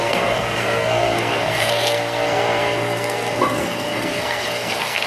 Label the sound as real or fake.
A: fake